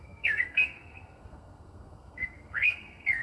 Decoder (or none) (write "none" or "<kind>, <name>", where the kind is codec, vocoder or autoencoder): codec, SNAC